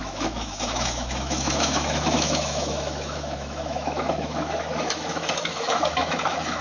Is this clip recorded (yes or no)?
no